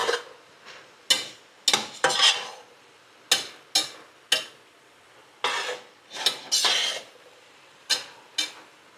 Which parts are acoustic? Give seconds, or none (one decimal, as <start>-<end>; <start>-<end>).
0.0-6.8; 7.9-9.0